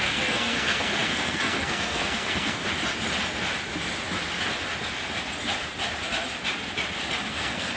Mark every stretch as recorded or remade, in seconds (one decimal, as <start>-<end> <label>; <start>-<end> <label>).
0.0-2.6 remade; 2.6-7.3 recorded; 7.3-7.8 remade